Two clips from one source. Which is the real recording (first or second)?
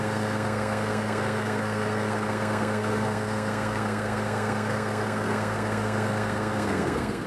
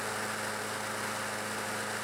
second